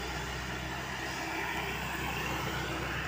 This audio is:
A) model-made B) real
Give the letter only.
B